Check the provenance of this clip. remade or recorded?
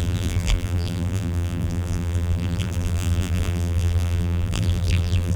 remade